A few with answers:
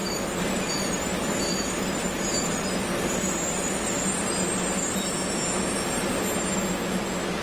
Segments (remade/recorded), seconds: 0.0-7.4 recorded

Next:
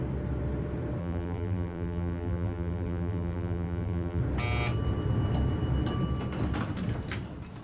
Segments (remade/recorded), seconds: 0.0-1.0 recorded; 1.0-4.2 remade; 4.2-7.6 recorded

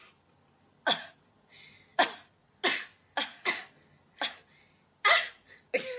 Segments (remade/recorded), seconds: 0.0-6.0 recorded